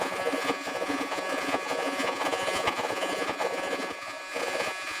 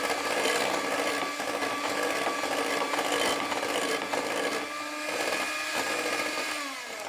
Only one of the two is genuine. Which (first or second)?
second